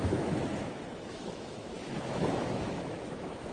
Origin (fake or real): fake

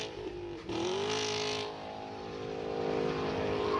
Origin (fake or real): real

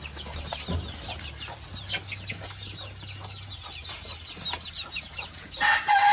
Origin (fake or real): real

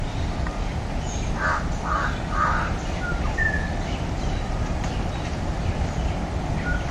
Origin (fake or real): fake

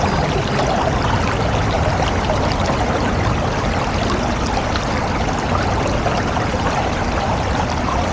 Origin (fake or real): real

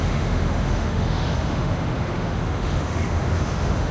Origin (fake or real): fake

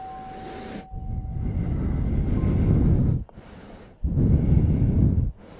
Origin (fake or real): real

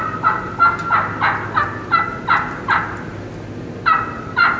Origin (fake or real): real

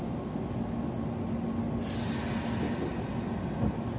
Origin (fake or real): real